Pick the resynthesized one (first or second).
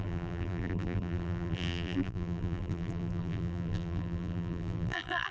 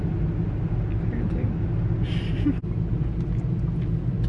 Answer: first